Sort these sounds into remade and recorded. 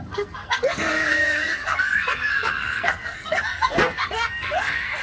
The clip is remade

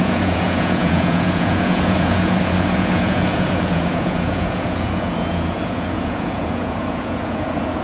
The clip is remade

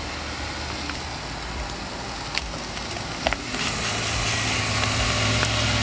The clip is recorded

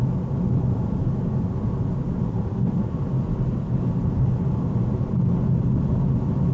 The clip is recorded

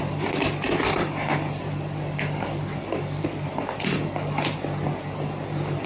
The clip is recorded